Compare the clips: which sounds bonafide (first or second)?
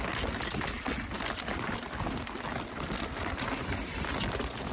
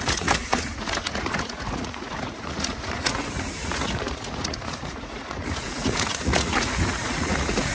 first